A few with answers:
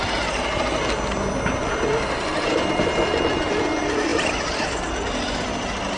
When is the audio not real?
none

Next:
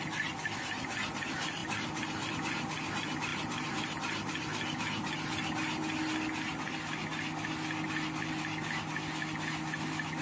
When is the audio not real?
none

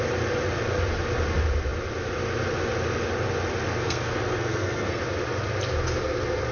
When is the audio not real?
3.7-5.0 (codec, SNAC)

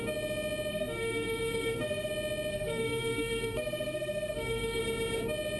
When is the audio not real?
0.7-2.1 (codec, SNAC); 2.5-4.8

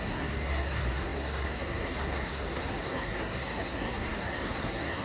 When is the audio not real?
0.0-5.0 (codec, SNAC)

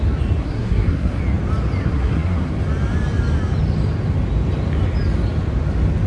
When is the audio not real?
0.4-1.2 (codec, SNAC); 1.8-2.5

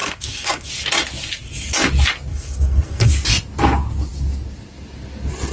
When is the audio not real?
0.0-0.7 (codec, SNAC); 2.3-3.1